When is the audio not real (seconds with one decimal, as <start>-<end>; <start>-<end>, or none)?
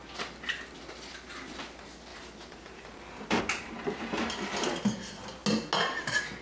2.1-3.4